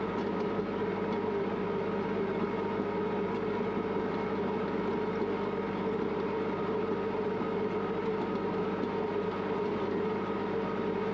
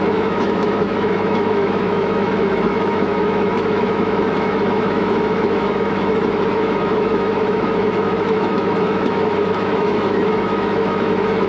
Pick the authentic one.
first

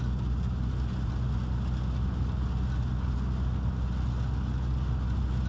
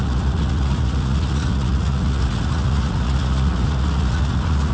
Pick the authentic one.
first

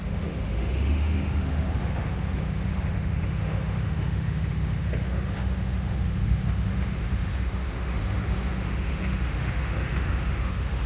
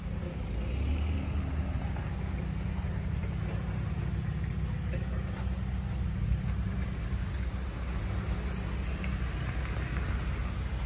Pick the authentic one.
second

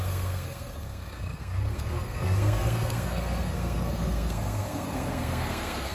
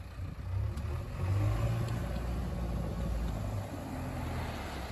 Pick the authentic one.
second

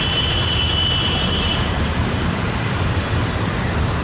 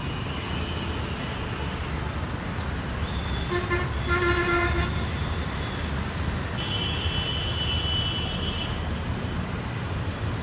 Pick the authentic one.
second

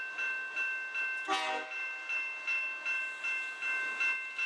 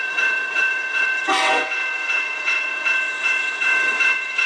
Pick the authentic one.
first